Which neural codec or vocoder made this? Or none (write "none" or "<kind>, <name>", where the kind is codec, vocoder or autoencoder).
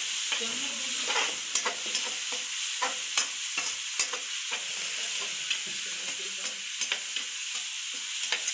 none